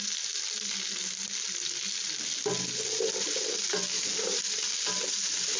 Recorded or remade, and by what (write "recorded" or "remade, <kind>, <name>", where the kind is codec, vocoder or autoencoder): recorded